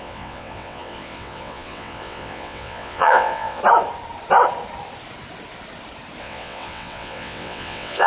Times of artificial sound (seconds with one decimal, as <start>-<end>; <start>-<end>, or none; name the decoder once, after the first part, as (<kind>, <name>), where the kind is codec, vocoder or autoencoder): 0.0-3.6 (vocoder, WaveNeXt); 6.2-8.1